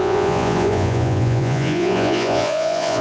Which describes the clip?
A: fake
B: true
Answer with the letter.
A